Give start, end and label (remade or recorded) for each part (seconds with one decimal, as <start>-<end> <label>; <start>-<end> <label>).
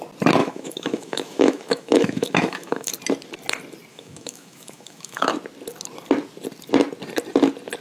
0.0-0.4 recorded; 0.4-2.9 remade; 2.9-3.9 recorded; 3.9-5.3 remade; 5.3-7.8 recorded